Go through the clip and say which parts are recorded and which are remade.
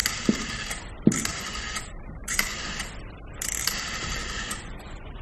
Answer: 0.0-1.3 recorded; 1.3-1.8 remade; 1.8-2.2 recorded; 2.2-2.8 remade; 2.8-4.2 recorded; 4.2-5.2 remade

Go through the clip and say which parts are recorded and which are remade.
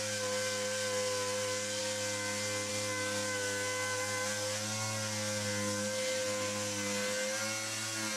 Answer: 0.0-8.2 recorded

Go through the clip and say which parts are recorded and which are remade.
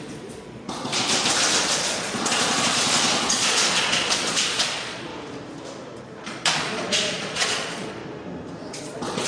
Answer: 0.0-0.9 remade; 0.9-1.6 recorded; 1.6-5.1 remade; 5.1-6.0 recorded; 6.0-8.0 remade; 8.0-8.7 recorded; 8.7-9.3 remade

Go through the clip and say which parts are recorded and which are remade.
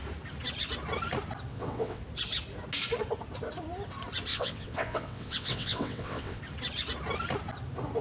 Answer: 0.0-1.5 recorded; 1.5-2.0 remade; 2.0-4.3 recorded; 4.3-6.4 remade; 6.4-8.0 recorded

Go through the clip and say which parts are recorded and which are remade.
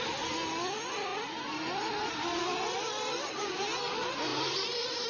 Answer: 0.0-4.3 recorded; 4.3-5.1 remade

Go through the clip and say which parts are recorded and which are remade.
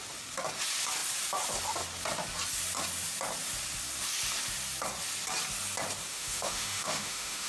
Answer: 0.0-6.1 recorded; 6.1-7.5 remade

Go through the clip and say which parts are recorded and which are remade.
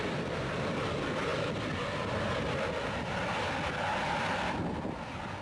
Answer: 0.0-5.4 recorded